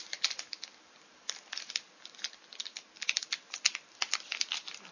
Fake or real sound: fake